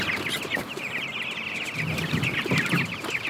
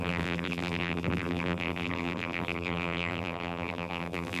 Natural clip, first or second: first